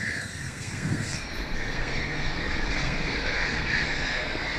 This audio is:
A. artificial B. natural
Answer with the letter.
A